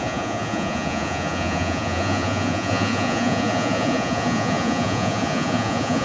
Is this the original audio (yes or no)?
no